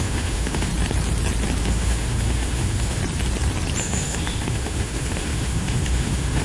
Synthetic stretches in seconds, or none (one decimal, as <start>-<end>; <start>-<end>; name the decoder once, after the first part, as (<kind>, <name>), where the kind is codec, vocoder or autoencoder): 0.0-0.7 (autoencoder, DAC-VAE); 1.6-3.0; 3.8-6.4